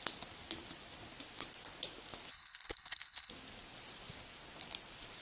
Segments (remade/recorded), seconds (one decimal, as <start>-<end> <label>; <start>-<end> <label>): 0.0-2.3 recorded; 2.3-3.3 remade; 3.3-5.2 recorded

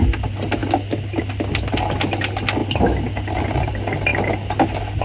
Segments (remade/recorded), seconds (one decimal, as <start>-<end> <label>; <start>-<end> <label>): 0.0-5.0 recorded